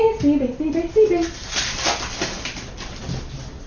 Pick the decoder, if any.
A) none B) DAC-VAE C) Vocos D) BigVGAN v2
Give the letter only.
A